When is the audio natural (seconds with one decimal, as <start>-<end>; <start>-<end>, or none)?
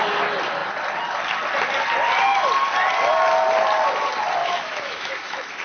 0.0-4.4